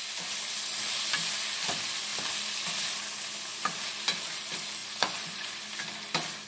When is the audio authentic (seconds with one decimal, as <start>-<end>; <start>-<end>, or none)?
0.0-4.8; 5.6-6.5

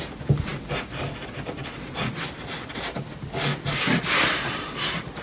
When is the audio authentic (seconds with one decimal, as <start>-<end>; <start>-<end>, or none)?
0.0-5.2

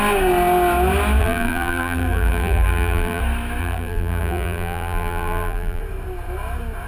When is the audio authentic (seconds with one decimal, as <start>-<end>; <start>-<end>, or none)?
0.0-1.2; 3.2-3.6; 5.8-6.9

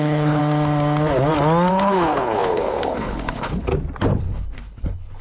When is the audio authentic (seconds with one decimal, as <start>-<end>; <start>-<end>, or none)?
0.4-1.7; 3.7-4.2

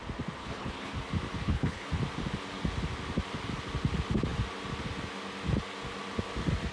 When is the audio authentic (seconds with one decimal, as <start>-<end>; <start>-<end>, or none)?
0.0-0.4; 0.9-1.4; 1.9-6.7

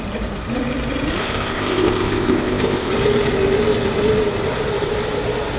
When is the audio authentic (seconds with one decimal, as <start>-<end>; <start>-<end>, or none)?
0.0-1.2; 2.9-5.6

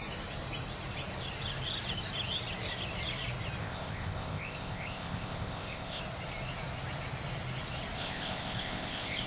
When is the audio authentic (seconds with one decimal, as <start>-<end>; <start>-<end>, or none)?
0.0-3.6; 6.0-8.0